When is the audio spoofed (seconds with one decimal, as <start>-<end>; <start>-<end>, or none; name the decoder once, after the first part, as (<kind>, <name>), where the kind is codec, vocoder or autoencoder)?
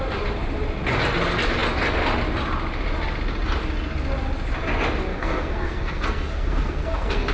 5.1-7.3 (codec, SNAC)